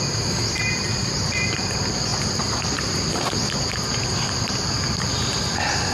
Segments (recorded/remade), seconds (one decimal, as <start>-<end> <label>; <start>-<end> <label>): 0.0-2.1 recorded; 2.1-4.5 remade; 4.5-5.9 recorded